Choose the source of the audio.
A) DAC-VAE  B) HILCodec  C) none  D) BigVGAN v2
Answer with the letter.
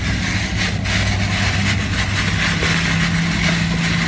C